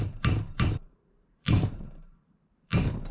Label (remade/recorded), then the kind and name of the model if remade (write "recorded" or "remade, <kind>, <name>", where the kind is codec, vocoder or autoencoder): remade, vocoder, BigVGAN v2